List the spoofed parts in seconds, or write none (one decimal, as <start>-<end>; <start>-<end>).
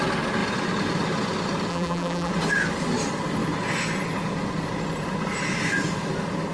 1.7-2.3